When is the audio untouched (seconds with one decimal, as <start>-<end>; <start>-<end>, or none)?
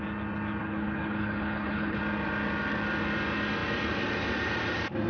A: 0.0-0.6; 2.0-5.1